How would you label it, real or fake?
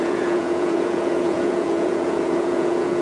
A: fake